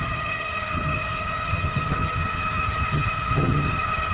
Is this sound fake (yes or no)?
yes